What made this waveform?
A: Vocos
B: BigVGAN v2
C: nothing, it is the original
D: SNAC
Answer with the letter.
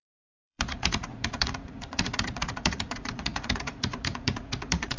A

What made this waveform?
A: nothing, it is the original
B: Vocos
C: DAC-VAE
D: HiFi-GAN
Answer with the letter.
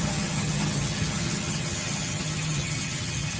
D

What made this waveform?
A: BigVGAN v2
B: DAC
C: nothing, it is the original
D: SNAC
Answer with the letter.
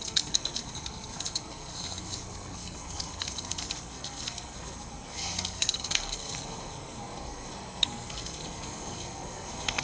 D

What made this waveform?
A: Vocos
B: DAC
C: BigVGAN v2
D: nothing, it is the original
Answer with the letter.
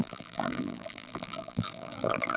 C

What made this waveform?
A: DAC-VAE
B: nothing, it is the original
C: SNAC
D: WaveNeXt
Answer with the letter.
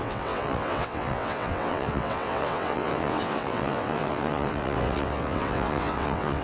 D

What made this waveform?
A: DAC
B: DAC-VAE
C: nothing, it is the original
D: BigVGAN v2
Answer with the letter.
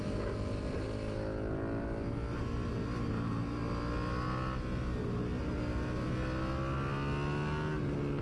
C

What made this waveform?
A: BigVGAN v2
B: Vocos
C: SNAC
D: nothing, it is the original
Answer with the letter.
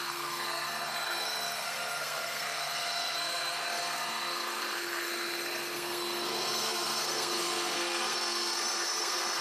C